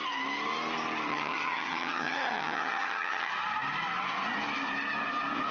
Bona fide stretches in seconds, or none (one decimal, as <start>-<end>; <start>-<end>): 0.0-1.1; 3.3-5.5